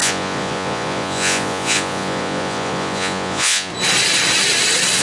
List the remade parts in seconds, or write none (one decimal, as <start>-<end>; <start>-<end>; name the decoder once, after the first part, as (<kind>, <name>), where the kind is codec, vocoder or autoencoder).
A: 0.0-3.7 (vocoder, Vocos)